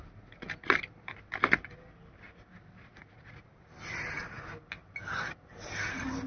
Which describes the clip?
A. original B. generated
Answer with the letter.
A